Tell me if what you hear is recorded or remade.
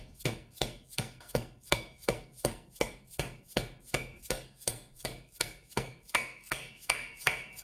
remade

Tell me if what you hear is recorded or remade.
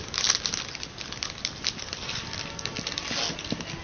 recorded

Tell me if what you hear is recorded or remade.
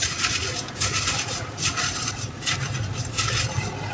recorded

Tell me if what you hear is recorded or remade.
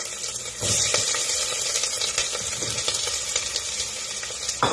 recorded